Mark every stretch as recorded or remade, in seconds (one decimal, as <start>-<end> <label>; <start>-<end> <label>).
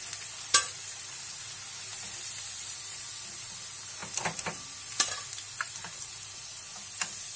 0.0-7.4 recorded